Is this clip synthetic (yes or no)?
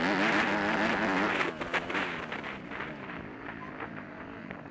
no